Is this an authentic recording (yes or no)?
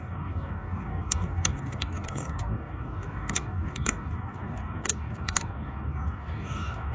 no